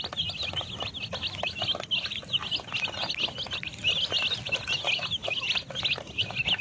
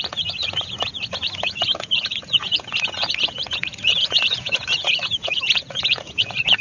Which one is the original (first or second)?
first